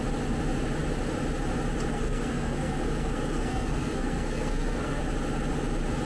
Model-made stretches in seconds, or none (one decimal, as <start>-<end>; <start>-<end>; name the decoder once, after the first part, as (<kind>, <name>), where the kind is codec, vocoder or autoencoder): 1.9-5.0 (codec, SNAC)